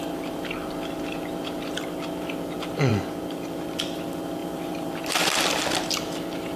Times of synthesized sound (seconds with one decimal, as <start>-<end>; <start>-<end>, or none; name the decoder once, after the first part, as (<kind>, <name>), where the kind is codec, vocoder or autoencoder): 4.4-5.6 (vocoder, BigVGAN v2)

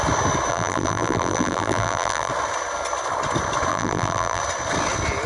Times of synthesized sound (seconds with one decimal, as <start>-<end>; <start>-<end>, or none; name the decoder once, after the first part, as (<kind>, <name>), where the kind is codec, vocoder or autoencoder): 0.5-2.3 (vocoder, BigVGAN v2); 3.7-4.4

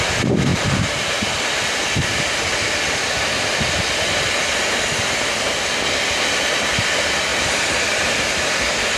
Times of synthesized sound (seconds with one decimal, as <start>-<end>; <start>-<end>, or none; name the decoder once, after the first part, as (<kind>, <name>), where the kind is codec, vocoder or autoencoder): 0.5-1.1 (vocoder, BigVGAN v2); 7.3-8.5

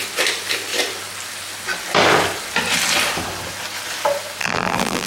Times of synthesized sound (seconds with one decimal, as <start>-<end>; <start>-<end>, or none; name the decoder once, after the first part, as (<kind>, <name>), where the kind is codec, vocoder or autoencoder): 4.4-5.1 (vocoder, BigVGAN v2)

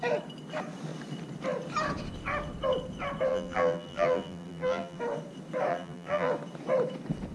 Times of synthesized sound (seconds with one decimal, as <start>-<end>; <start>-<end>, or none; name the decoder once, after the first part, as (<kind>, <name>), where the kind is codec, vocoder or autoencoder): 3.3-5.0 (vocoder, BigVGAN v2); 5.7-6.3

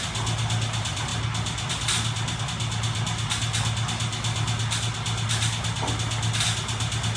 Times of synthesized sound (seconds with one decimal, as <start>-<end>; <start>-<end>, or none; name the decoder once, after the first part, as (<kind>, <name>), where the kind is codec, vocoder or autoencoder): none